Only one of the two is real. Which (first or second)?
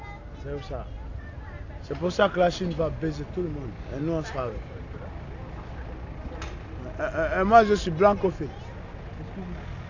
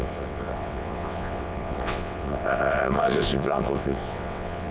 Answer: first